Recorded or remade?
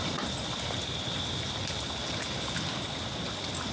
recorded